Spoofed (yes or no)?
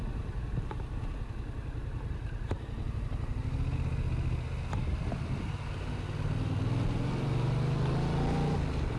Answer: no